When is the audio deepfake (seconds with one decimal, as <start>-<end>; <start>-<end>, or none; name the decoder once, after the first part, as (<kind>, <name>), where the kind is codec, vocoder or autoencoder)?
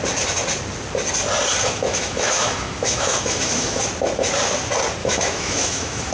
1.6-3.8 (autoencoder, DAC-VAE); 5.0-6.1